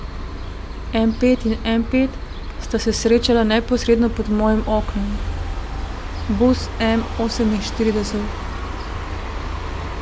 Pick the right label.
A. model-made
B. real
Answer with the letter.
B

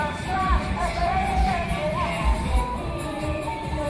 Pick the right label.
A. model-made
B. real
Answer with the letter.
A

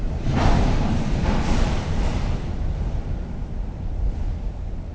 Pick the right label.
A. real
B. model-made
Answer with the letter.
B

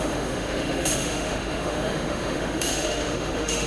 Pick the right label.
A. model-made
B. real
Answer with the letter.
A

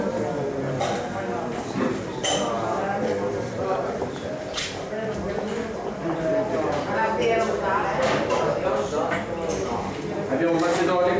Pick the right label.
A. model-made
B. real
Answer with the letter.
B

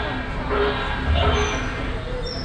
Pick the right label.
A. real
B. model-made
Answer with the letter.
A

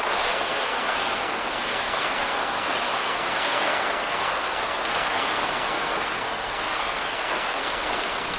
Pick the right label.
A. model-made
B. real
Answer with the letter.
A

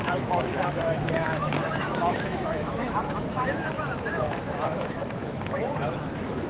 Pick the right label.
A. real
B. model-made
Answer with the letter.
B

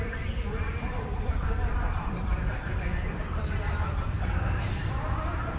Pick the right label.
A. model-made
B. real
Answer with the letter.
A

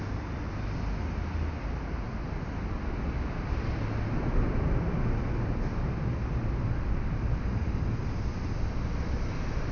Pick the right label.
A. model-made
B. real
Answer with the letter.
B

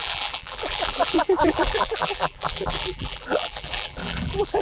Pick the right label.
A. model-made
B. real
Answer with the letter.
A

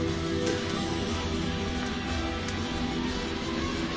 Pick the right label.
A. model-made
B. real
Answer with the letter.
B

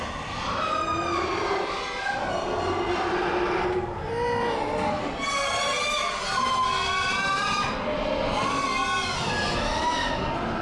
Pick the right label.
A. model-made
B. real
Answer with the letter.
B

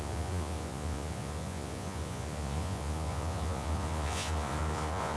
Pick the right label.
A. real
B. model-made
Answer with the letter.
B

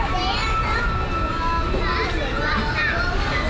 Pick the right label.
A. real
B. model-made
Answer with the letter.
A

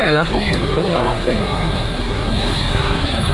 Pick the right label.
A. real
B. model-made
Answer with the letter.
B